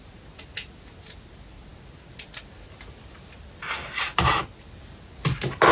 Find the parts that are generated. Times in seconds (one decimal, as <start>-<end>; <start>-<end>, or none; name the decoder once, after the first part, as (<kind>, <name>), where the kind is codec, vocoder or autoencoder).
none